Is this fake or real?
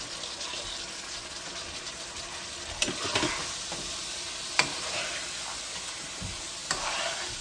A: real